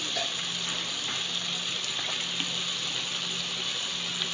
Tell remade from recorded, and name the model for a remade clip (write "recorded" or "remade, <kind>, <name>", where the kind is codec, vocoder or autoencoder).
recorded